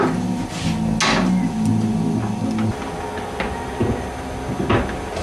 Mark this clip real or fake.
real